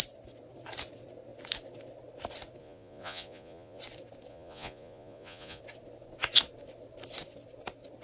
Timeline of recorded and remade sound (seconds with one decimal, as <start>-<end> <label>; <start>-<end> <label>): 0.0-2.6 recorded; 2.6-3.8 remade; 3.8-4.3 recorded; 4.3-5.6 remade; 5.6-8.0 recorded